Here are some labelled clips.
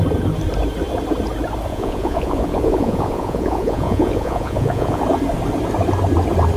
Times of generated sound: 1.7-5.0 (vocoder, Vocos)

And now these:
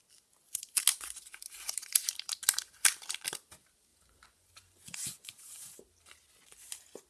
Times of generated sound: 3.9-5.8 (vocoder, Vocos)

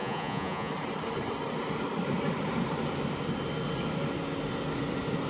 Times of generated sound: 0.0-0.7 (vocoder, Vocos)

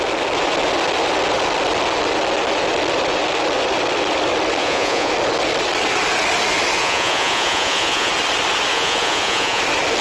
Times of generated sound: 4.6-5.1 (vocoder, Vocos); 6.8-8.1; 8.7-9.6